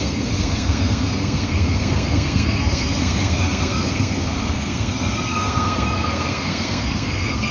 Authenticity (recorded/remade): remade